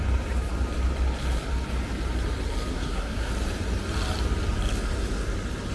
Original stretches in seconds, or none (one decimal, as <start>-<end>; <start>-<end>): 0.0-2.7; 3.3-5.7